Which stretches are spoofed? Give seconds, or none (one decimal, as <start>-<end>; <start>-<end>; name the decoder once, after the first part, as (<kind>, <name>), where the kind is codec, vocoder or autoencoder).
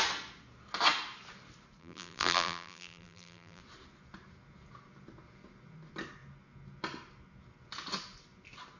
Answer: 1.8-3.6 (vocoder, BigVGAN v2)